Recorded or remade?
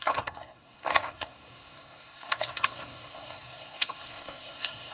remade